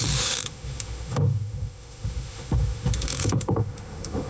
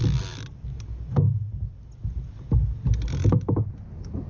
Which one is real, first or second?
second